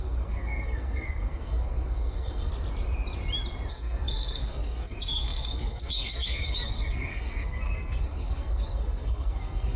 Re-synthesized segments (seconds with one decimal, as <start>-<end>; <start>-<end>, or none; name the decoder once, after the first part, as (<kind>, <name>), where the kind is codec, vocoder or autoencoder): 0.0-2.5 (codec, SNAC); 3.7-9.8